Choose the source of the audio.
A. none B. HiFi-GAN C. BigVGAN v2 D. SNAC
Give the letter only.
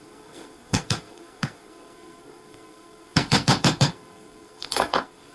D